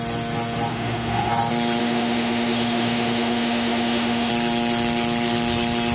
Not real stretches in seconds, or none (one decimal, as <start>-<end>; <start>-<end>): 0.7-1.3; 1.8-4.3